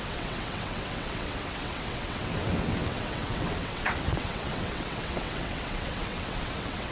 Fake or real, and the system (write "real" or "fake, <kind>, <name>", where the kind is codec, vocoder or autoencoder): fake, vocoder, WaveNeXt